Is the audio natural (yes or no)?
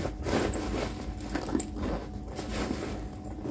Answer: yes